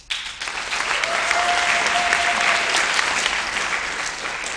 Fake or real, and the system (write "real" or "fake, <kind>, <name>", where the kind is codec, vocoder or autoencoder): real